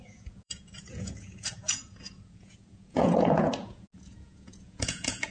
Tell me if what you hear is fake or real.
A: fake